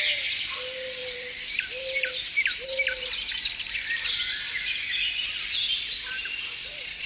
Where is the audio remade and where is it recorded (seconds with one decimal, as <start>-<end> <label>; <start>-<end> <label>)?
0.0-1.0 recorded; 1.0-2.8 remade; 2.8-7.1 recorded